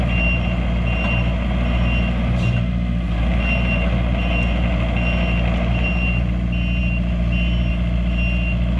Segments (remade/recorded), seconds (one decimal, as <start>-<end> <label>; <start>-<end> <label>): 0.0-8.8 recorded